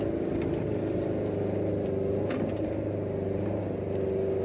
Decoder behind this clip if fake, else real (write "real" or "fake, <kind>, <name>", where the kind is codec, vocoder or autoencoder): real